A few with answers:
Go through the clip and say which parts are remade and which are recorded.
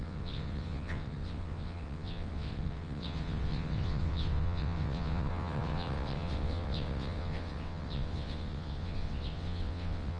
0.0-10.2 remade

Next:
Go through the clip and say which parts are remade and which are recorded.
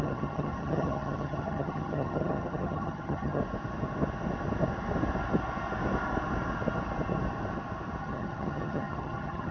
0.0-3.4 remade; 3.4-8.0 recorded; 8.0-9.5 remade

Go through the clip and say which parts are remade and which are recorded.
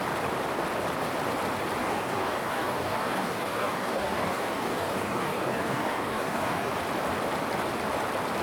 0.0-1.8 recorded; 1.8-6.7 remade; 6.7-8.4 recorded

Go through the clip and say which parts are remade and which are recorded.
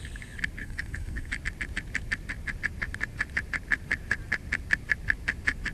0.0-0.6 recorded; 0.6-1.3 remade; 1.3-5.7 recorded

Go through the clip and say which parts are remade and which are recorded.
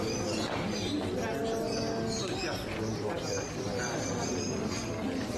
0.0-5.4 recorded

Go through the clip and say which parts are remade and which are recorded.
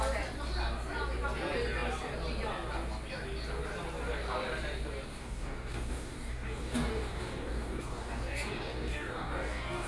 0.0-5.1 recorded; 5.1-9.9 remade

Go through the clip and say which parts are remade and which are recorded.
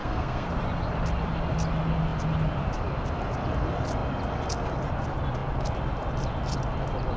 0.0-0.5 remade; 0.5-7.2 recorded